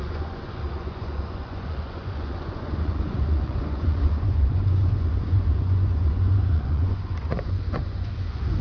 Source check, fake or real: fake